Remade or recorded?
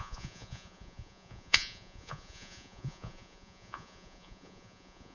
remade